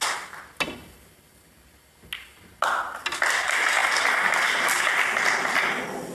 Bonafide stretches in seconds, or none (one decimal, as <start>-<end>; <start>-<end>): 0.0-6.1